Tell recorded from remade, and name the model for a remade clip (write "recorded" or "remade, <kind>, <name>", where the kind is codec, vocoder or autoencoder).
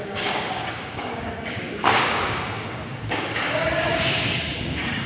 remade, codec, DAC